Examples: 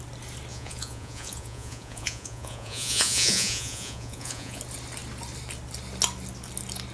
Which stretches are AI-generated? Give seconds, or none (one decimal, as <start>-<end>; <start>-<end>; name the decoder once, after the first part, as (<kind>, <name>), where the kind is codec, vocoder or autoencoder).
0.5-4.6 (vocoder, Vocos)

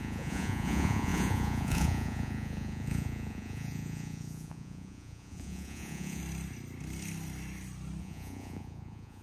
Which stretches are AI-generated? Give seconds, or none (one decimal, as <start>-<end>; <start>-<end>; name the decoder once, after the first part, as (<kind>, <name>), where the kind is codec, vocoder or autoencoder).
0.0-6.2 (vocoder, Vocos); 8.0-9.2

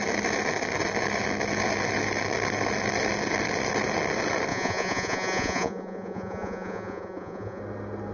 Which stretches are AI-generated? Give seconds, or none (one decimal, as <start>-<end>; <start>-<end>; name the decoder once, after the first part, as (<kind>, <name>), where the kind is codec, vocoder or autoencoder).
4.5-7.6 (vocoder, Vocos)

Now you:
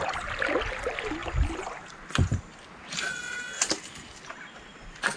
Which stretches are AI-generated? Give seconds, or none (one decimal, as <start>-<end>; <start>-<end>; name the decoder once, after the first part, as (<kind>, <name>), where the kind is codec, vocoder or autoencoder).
none